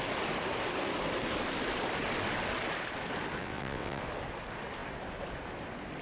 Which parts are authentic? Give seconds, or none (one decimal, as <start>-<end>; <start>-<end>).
0.0-3.4; 4.0-6.0